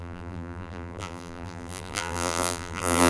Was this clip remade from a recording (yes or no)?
yes